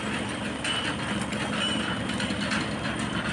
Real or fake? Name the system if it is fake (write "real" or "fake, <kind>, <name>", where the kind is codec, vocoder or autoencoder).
real